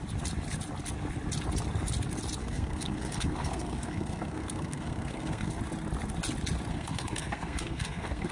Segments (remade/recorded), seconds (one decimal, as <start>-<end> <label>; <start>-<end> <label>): 0.0-2.4 recorded; 2.4-5.6 remade; 5.6-6.7 recorded; 6.7-8.3 remade